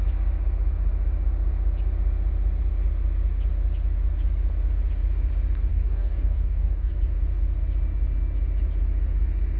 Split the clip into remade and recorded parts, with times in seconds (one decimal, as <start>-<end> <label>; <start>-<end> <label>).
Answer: 0.0-5.7 recorded; 5.7-6.9 remade; 6.9-9.6 recorded